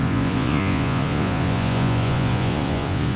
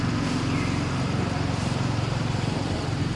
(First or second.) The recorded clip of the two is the second